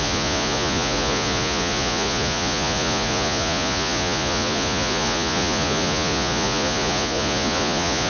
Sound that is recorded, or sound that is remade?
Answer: remade